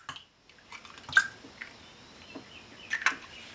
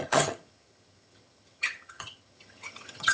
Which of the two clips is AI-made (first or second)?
second